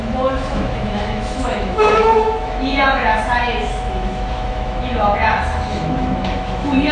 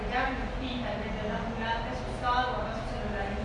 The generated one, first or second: first